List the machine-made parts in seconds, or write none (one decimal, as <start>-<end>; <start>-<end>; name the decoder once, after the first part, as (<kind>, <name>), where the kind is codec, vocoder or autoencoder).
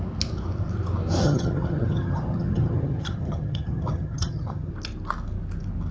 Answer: 1.2-4.7 (vocoder, HiFi-GAN)